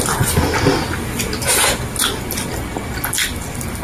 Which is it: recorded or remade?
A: recorded